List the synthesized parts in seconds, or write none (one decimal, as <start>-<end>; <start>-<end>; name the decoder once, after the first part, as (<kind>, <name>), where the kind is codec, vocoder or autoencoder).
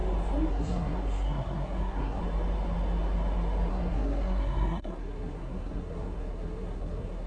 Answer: 0.5-2.2 (codec, SNAC); 3.7-7.3